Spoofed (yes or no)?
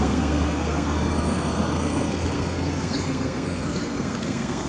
yes